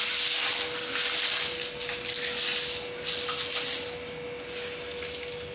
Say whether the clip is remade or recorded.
recorded